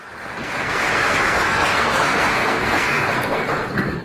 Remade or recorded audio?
remade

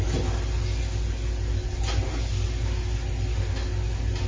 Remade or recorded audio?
recorded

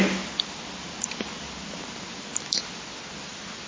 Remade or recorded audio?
recorded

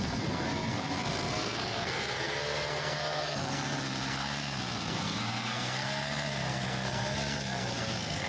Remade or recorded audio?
remade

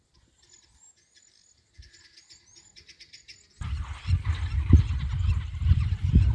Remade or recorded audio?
recorded